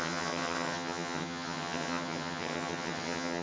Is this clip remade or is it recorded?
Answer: remade